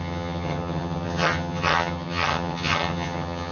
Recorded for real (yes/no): no